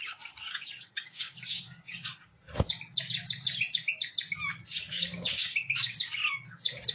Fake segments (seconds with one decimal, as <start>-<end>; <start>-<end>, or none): 0.0-2.3; 4.9-6.2